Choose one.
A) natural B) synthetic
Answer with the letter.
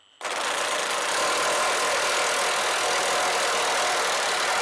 A